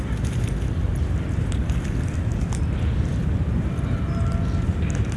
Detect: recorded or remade recorded